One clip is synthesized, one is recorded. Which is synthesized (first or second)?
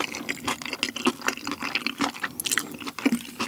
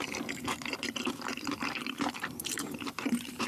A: second